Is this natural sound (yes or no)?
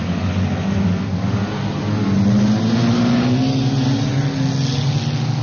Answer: yes